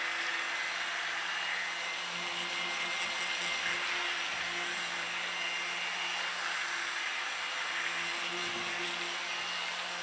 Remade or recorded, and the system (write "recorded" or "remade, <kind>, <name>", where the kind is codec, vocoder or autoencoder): recorded